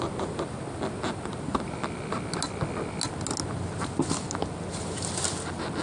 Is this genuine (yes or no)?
yes